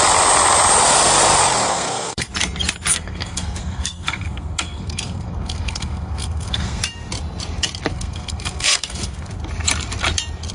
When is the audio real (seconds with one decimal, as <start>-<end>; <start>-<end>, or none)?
0.0-1.7; 2.3-2.9; 6.8-7.9; 9.3-10.5